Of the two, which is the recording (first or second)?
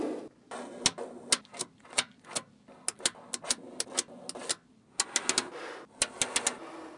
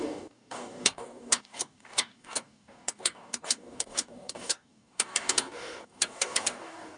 first